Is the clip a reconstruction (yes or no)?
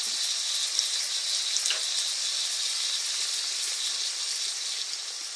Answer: no